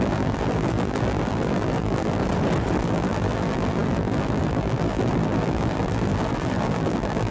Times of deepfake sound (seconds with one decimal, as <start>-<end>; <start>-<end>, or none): 0.0-2.2; 2.8-7.3